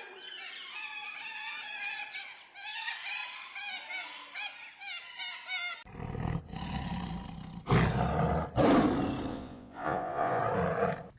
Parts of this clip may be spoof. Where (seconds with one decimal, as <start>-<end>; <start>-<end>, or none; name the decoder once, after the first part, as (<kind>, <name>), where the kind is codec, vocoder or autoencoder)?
9.3-10.4 (vocoder, Vocos)